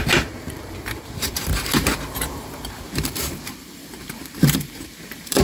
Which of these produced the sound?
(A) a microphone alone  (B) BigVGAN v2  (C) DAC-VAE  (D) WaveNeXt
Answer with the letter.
B